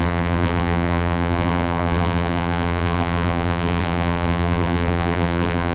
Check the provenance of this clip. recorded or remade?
remade